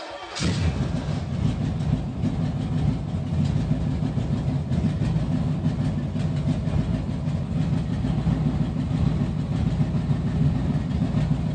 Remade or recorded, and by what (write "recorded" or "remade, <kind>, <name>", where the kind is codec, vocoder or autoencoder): recorded